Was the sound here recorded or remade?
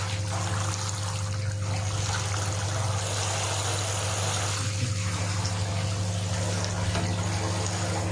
recorded